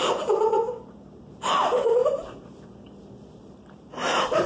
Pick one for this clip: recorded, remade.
remade